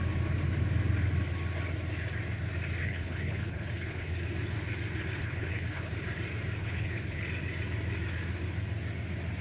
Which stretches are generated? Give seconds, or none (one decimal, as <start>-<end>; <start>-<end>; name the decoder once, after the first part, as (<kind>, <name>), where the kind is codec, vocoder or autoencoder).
2.8-4.2 (codec, HILCodec); 5.2-5.9; 6.6-7.2